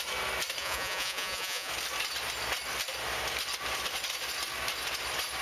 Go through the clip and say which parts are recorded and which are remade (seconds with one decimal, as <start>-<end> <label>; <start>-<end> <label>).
0.0-0.6 recorded; 0.6-1.7 remade; 1.7-5.4 recorded